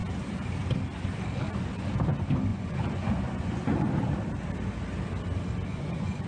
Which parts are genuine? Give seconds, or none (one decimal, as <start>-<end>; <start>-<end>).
0.0-2.5; 3.9-5.7